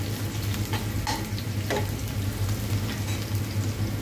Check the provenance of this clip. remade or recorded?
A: recorded